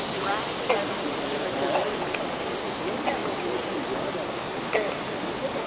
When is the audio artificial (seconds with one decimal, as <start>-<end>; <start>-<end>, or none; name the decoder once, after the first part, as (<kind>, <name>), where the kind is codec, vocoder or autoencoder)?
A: none